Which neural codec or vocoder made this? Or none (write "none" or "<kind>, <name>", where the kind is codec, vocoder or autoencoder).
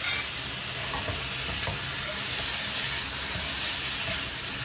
none